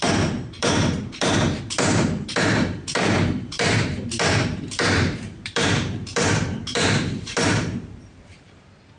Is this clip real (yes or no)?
no